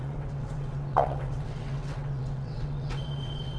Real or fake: fake